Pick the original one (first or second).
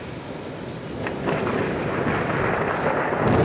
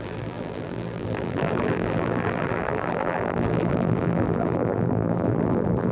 first